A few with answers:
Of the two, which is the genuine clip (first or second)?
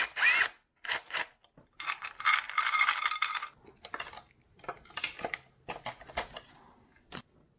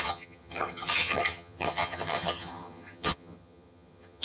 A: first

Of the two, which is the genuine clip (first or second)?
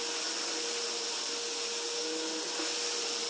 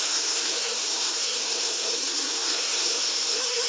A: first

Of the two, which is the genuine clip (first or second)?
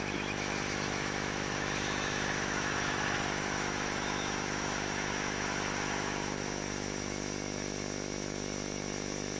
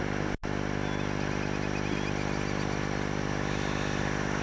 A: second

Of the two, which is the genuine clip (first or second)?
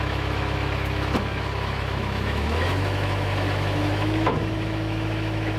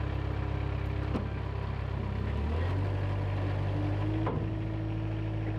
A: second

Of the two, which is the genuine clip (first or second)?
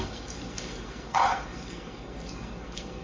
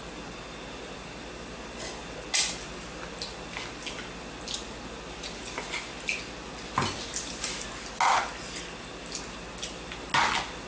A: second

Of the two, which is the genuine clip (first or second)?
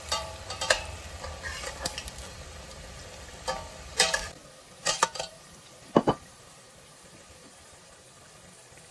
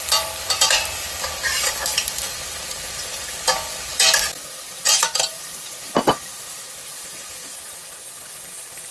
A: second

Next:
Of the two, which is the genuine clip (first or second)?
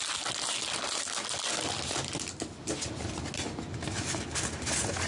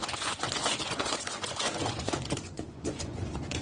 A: first